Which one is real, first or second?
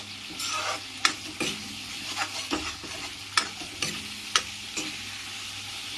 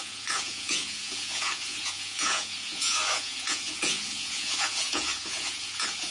first